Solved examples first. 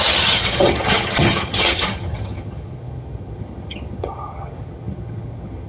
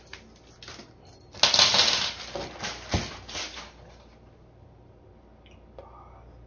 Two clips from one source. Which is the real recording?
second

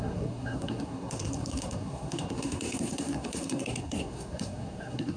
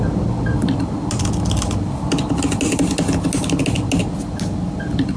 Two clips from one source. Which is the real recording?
second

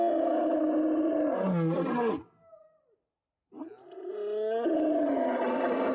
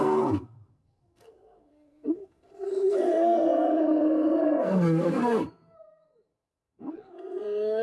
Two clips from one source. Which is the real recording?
first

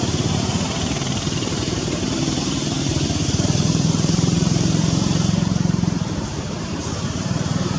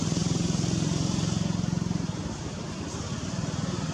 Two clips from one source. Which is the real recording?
second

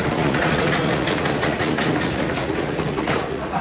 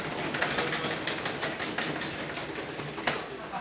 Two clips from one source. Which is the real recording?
second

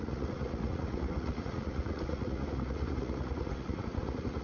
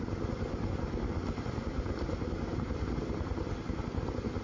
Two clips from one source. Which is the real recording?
second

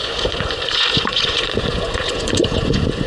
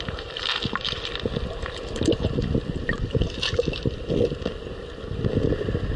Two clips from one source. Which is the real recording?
second